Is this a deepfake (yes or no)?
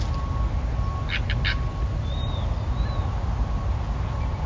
no